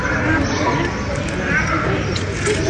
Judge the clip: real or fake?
real